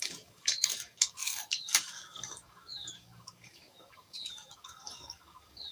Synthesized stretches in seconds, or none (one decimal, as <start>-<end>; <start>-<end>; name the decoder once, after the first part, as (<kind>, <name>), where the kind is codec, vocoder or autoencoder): 0.0-5.7 (codec, DAC)